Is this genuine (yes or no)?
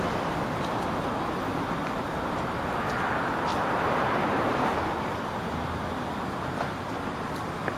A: yes